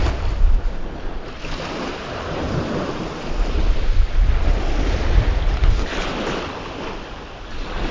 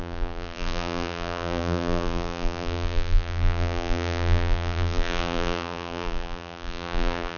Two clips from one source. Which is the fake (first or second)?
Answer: second